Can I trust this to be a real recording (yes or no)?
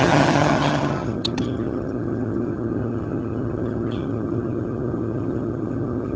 no